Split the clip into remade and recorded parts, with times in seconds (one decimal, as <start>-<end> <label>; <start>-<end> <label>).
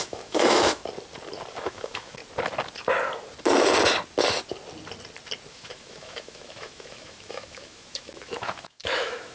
0.0-0.8 remade; 0.8-1.5 recorded; 1.5-2.2 remade; 2.2-5.5 recorded; 5.5-9.3 remade